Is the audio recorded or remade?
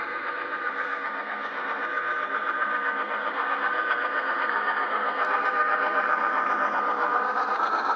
remade